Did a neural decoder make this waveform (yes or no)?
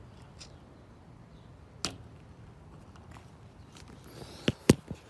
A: no